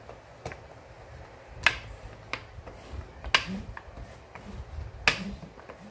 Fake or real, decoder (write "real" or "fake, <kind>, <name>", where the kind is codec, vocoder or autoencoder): real